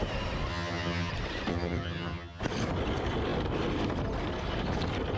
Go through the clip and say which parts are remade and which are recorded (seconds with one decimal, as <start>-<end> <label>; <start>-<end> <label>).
0.0-0.5 recorded; 0.5-1.1 remade; 1.1-1.5 recorded; 1.5-2.4 remade; 2.4-5.2 recorded